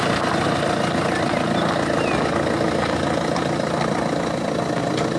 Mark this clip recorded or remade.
recorded